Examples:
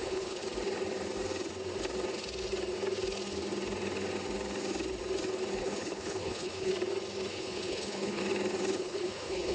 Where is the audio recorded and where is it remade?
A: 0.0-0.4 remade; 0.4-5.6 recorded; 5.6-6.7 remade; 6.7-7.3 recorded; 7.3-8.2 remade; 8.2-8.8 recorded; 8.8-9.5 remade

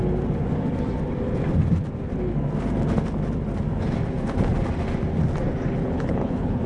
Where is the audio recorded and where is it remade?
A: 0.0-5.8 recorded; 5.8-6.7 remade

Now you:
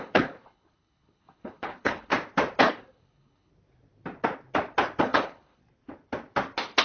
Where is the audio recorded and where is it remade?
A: 0.0-2.1 remade; 2.1-2.6 recorded; 2.6-3.5 remade; 3.5-5.0 recorded; 5.0-5.6 remade; 5.6-6.8 recorded

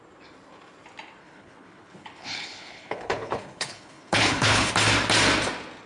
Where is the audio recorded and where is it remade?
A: 0.0-1.2 recorded; 1.2-4.7 remade; 4.7-5.9 recorded

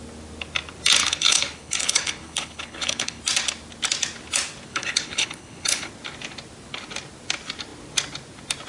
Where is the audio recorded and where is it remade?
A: 0.0-1.0 recorded; 1.0-3.2 remade; 3.2-4.7 recorded; 4.7-5.9 remade; 5.9-8.7 recorded

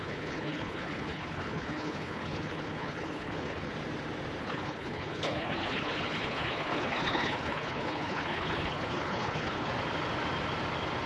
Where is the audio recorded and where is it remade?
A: 0.0-3.7 remade; 3.7-4.4 recorded; 4.4-9.7 remade; 9.7-11.1 recorded